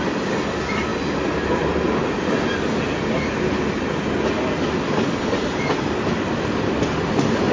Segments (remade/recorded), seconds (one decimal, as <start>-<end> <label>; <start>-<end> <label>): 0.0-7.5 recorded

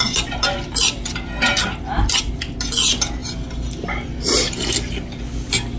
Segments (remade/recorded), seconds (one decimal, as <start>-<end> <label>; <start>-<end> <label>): 0.0-5.8 recorded

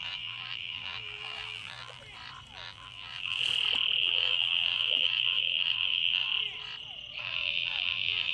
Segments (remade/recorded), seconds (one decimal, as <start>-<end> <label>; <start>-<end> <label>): 0.0-2.0 remade; 2.0-2.5 recorded; 2.5-3.4 remade; 3.4-4.0 recorded; 4.0-6.3 remade; 6.3-7.2 recorded; 7.2-8.3 remade

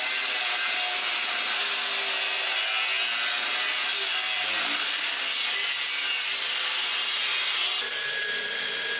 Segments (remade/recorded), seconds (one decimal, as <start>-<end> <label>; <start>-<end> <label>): 0.0-9.0 recorded

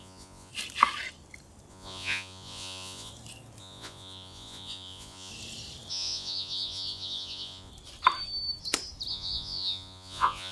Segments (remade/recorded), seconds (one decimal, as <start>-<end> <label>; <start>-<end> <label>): 0.0-0.5 remade; 0.5-1.7 recorded; 1.7-3.1 remade; 3.1-3.6 recorded; 3.6-5.3 remade; 5.3-5.9 recorded; 5.9-7.7 remade; 7.7-9.1 recorded; 9.1-10.5 remade

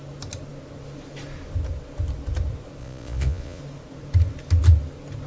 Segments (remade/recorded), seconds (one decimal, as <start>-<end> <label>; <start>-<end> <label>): 0.0-2.8 recorded; 2.8-3.6 remade; 3.6-5.3 recorded